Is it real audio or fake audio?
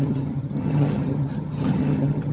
fake